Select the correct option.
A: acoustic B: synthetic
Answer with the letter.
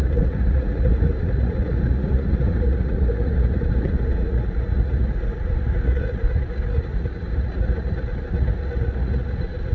B